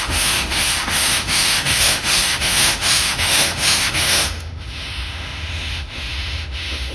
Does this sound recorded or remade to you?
remade